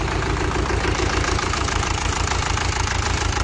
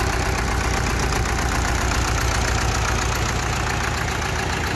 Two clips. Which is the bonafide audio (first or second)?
second